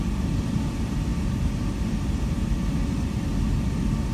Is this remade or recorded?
recorded